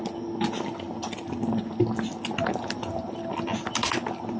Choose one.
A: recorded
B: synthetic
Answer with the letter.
A